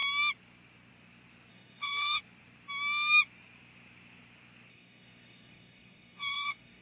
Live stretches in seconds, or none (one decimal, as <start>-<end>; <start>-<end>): 0.0-1.5; 2.2-4.7